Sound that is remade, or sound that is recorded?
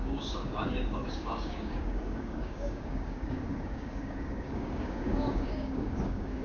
remade